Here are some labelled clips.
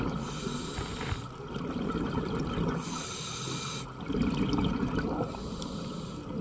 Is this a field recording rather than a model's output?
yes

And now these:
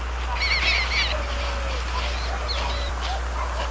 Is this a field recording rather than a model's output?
yes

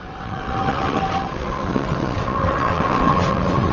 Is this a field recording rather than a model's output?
no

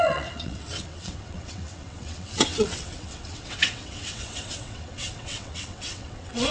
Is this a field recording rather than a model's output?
no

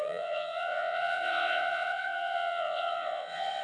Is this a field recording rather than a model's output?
no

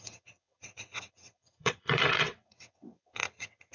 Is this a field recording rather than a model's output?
no